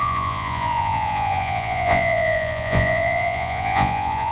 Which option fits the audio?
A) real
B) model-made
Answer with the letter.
B